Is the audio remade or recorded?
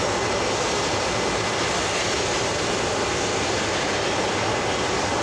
recorded